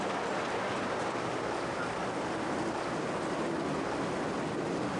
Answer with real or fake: real